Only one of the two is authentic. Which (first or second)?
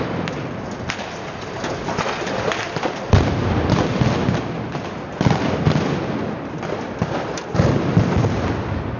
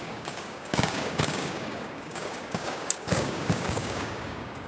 first